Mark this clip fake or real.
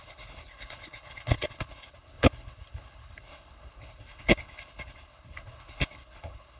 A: fake